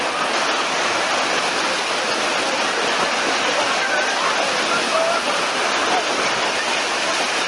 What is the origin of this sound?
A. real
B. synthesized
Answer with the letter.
A